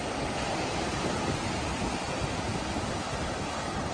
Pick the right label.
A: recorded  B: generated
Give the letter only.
A